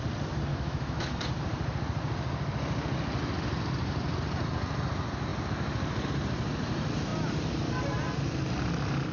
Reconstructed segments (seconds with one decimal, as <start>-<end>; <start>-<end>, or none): 0.5-1.2